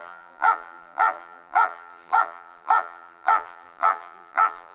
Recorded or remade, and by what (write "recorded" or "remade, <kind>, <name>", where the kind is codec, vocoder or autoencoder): remade, vocoder, BigVGAN v2